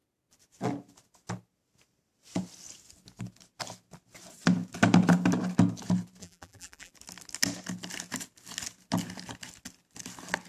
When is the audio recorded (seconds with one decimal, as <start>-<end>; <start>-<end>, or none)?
0.0-6.2; 6.9-10.5